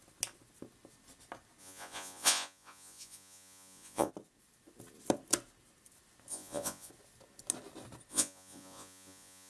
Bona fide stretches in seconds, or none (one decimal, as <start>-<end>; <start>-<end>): 0.0-1.6; 4.1-6.3; 6.9-8.1